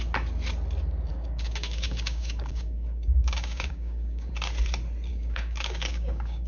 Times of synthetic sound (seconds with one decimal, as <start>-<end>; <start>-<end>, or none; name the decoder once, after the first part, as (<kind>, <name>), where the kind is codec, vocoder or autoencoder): 1.1-4.3 (codec, DAC); 5.1-6.5